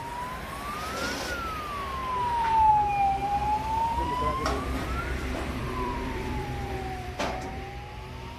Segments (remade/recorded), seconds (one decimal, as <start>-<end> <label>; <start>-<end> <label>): 0.0-2.0 recorded; 2.0-2.7 remade; 2.7-3.1 recorded; 3.1-7.2 remade; 7.2-8.4 recorded

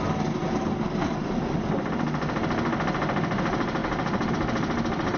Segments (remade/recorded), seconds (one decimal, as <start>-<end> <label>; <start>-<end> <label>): 0.0-0.4 recorded; 0.4-1.9 remade; 1.9-3.8 recorded; 3.8-4.3 remade; 4.3-5.2 recorded

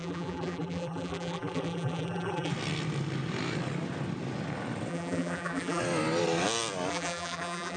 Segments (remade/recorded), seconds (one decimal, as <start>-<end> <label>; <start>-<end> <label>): 0.0-2.5 remade; 2.5-4.9 recorded; 4.9-5.8 remade; 5.8-6.9 recorded; 6.9-7.8 remade

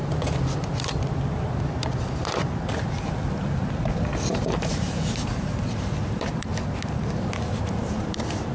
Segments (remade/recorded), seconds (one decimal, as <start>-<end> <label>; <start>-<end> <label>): 0.0-3.8 recorded; 3.8-6.5 remade; 6.5-7.6 recorded; 7.6-8.5 remade

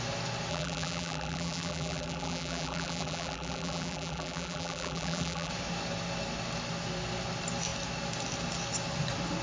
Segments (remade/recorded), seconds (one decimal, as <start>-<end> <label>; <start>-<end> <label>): 0.0-0.5 recorded; 0.5-5.5 remade; 5.5-9.4 recorded

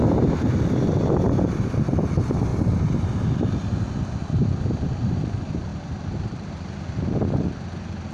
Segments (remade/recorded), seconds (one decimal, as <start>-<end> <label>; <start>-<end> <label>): 0.0-5.7 recorded; 5.7-6.5 remade; 6.5-8.1 recorded

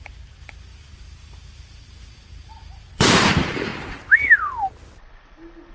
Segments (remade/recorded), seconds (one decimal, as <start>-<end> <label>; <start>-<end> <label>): 0.0-3.7 remade; 3.7-5.7 recorded